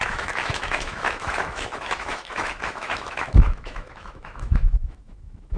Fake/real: fake